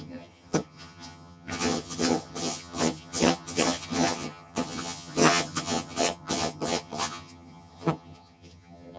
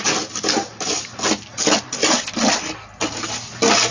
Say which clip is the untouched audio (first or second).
second